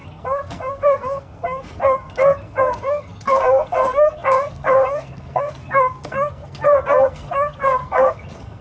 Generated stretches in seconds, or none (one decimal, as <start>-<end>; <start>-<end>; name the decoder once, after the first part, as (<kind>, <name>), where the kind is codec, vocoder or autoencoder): 0.0-8.6 (codec, SNAC)